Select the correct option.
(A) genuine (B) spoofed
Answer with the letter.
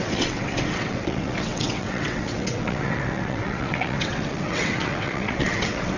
B